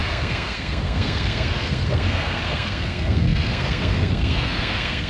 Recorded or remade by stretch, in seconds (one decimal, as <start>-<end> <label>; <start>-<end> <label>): 0.0-5.1 remade